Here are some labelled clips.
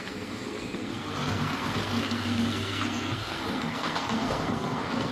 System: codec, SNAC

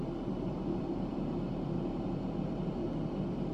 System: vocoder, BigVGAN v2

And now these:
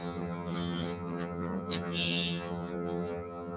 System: vocoder, HiFi-GAN